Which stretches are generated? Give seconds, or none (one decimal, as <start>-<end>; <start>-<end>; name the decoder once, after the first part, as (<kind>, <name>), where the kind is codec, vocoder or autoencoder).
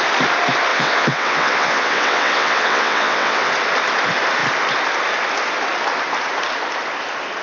0.7-3.5 (vocoder, WaveNeXt)